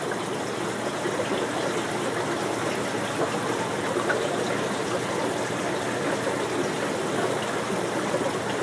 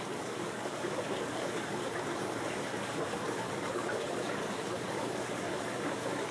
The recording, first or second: first